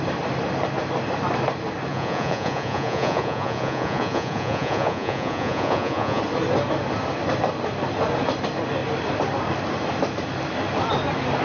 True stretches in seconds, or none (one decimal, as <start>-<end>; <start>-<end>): 0.0-1.9; 6.2-11.4